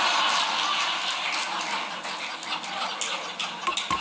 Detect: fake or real real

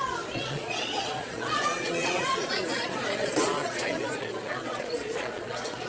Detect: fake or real fake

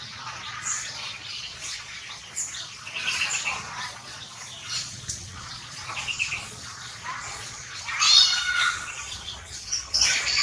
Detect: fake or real fake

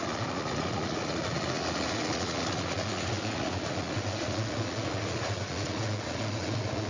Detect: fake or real fake